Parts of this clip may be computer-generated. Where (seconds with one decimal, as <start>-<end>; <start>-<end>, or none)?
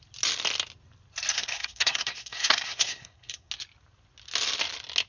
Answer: 1.3-3.5